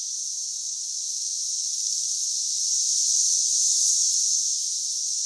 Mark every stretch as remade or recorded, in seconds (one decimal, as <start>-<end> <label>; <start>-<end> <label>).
0.0-5.3 recorded